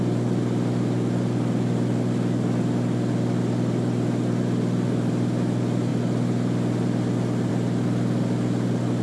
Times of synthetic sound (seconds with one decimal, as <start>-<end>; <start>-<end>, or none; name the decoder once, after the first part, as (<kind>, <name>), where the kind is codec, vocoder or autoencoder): none